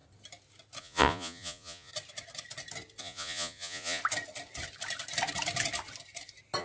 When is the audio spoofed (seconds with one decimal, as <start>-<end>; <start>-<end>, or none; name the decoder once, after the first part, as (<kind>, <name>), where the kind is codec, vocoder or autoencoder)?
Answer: 0.8-1.9 (vocoder, Vocos); 3.0-4.0